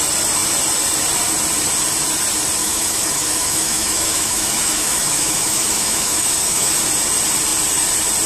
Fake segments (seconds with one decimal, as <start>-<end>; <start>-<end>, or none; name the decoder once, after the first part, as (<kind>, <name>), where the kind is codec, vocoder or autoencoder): 2.6-6.7 (autoencoder, DAC-VAE)